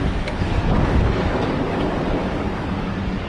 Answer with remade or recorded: remade